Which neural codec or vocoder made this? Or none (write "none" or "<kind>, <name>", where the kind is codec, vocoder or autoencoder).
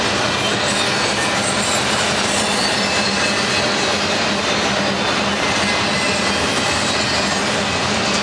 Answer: none